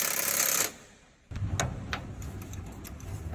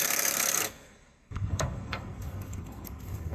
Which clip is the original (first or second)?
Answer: first